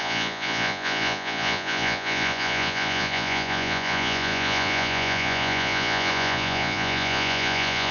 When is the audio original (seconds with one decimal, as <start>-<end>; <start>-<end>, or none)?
none